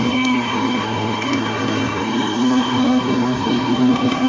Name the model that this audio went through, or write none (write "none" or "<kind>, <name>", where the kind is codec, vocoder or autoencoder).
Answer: codec, SNAC